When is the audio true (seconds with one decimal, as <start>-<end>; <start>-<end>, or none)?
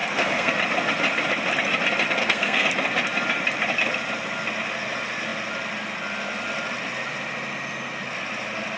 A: 0.5-2.2; 2.7-8.8